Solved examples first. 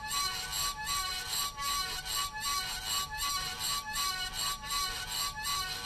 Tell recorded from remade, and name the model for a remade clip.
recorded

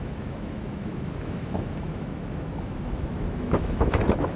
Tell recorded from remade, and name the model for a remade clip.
remade, autoencoder, DAC-VAE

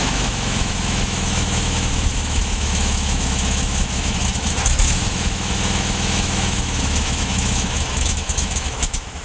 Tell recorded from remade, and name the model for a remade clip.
remade, autoencoder, DAC-VAE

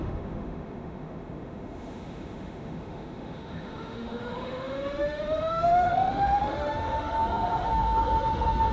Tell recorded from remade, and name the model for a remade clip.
remade, autoencoder, DAC-VAE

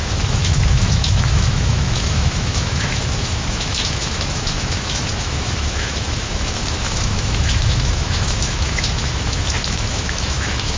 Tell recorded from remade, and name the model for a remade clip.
remade, autoencoder, DAC-VAE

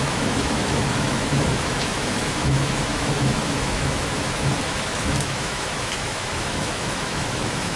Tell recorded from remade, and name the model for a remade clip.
remade, autoencoder, DAC-VAE